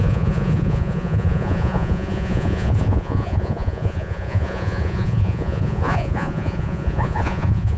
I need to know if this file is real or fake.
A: fake